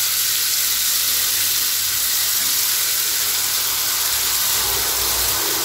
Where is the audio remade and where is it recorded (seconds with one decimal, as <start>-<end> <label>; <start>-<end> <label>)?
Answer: 0.0-5.6 recorded